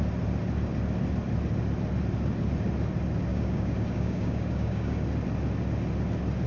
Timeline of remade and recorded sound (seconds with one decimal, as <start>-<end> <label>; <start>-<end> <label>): 0.0-3.3 recorded; 3.3-5.0 remade; 5.0-6.5 recorded

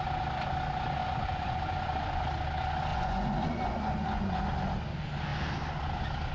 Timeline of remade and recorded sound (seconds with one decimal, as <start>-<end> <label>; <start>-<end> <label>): 0.0-1.0 recorded; 1.0-2.2 remade; 2.2-2.9 recorded; 2.9-4.4 remade; 4.4-6.3 recorded

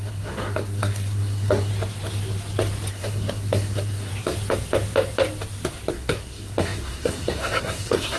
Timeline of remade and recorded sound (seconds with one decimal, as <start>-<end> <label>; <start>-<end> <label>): 0.0-1.7 remade; 1.7-2.9 recorded; 2.9-4.1 remade; 4.1-5.9 recorded; 5.9-8.2 remade

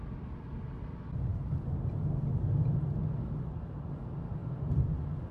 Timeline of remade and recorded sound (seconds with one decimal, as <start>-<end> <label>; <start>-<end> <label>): 0.0-4.4 recorded; 4.4-5.3 remade